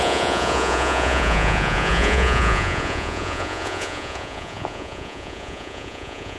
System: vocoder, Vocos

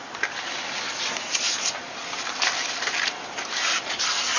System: vocoder, BigVGAN v2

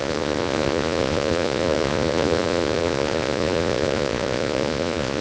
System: vocoder, Vocos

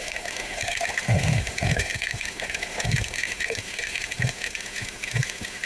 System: autoencoder, DAC-VAE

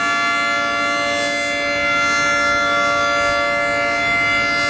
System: none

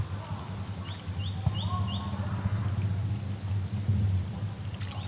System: none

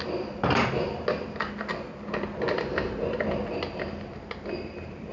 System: none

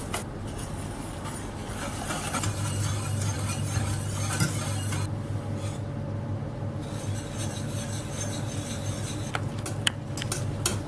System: none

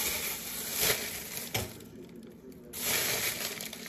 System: none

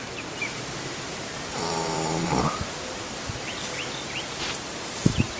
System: vocoder, BigVGAN v2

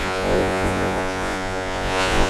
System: vocoder, Vocos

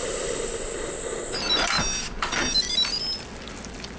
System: vocoder, BigVGAN v2